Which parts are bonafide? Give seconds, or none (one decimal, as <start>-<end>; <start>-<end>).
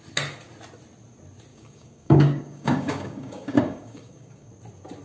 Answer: 0.0-1.5; 4.5-5.0